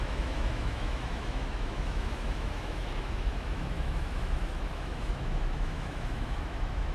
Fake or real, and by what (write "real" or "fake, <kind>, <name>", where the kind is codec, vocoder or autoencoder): fake, autoencoder, DAC-VAE